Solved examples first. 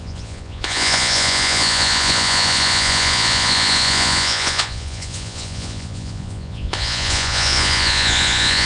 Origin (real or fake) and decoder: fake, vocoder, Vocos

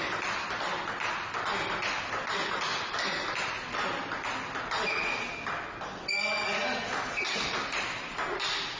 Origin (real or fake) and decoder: real